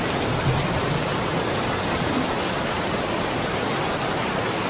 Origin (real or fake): real